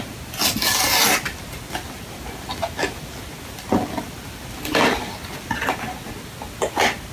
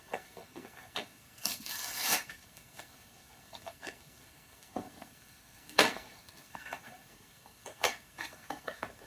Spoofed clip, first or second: second